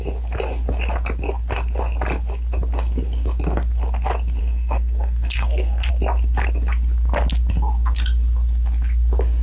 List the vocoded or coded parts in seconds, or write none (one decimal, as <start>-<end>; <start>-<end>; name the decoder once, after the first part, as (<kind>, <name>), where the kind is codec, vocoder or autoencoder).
4.4-5.9 (codec, SNAC)